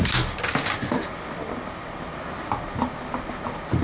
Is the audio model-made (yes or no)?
no